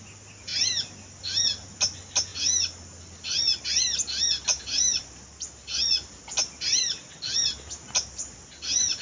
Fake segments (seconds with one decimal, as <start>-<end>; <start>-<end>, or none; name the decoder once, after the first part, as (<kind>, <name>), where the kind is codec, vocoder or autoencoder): none